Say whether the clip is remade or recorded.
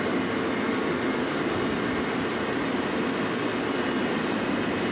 recorded